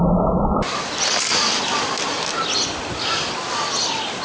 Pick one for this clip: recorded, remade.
recorded